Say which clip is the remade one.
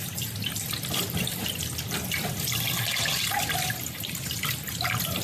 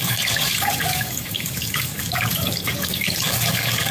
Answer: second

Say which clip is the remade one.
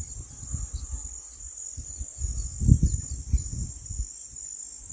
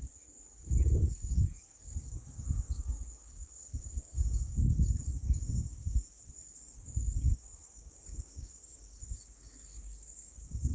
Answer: second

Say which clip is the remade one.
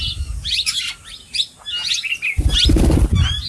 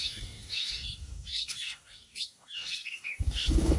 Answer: second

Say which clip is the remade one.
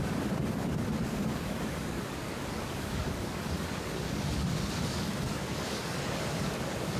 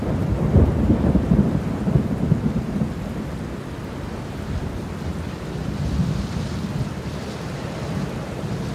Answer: first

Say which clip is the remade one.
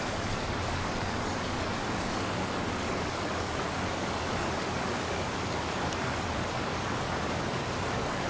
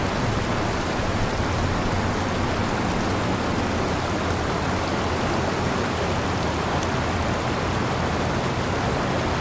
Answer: first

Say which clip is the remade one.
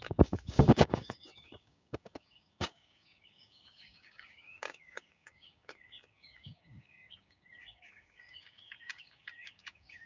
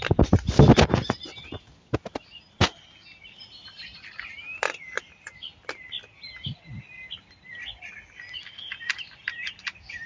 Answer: first